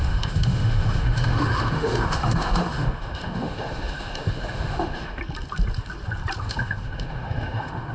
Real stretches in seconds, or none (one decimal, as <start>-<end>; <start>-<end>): 5.2-6.4